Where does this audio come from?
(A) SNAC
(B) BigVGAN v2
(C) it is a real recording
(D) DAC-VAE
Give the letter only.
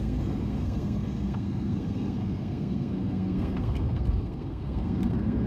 A